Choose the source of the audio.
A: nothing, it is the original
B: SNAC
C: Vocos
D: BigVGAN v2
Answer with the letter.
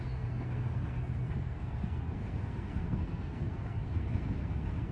B